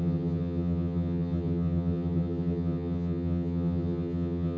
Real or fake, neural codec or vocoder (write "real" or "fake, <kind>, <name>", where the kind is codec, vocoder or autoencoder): fake, vocoder, HiFi-GAN